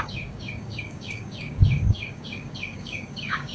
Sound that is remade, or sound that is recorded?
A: remade